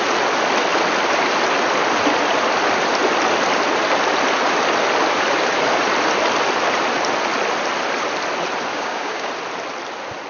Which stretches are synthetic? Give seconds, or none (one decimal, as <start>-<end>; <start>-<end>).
8.7-9.3